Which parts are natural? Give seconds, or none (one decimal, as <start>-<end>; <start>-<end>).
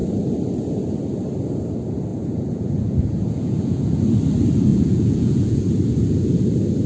0.0-2.1; 4.0-4.7; 5.6-6.9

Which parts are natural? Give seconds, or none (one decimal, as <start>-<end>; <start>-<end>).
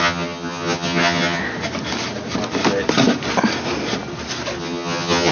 1.4-4.6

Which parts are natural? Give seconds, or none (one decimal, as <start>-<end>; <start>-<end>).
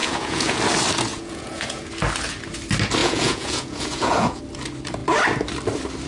0.6-1.1; 1.9-3.0; 4.4-6.1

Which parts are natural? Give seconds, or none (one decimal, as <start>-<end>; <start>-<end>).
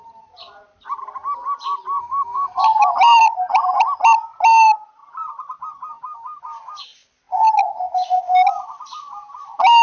0.0-2.0; 2.6-9.8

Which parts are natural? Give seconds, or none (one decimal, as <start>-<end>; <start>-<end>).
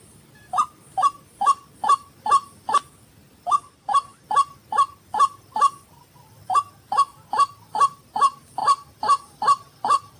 4.1-5.4; 8.6-9.3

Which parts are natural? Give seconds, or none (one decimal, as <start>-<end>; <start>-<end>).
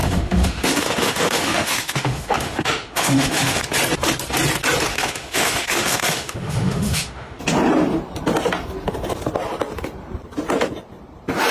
3.6-4.9; 7.4-11.5